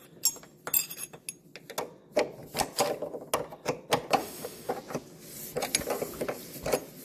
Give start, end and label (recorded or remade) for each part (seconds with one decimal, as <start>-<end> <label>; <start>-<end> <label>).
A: 0.0-4.2 recorded; 4.2-4.7 remade; 4.7-7.0 recorded